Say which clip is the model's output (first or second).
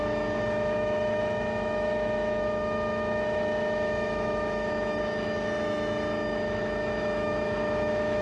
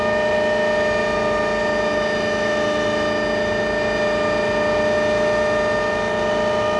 first